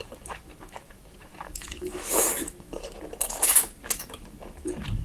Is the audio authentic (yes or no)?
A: no